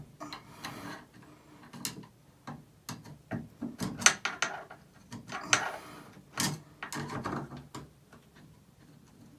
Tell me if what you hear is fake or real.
real